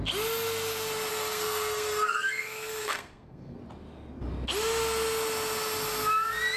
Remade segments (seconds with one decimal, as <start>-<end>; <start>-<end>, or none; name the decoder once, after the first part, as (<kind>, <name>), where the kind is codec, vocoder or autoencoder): 1.1-3.6 (codec, SNAC)